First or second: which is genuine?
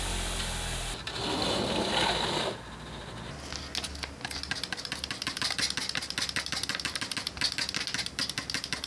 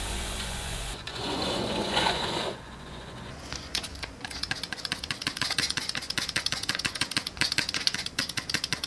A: first